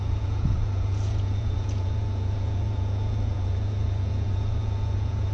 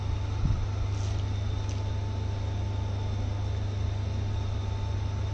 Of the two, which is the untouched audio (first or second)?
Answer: second